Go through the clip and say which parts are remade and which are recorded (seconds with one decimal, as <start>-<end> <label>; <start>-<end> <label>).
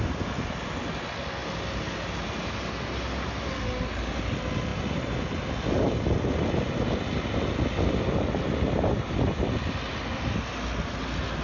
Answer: 0.0-11.4 recorded